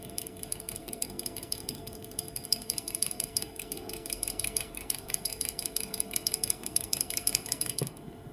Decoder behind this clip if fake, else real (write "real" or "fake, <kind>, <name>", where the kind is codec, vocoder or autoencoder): fake, codec, SNAC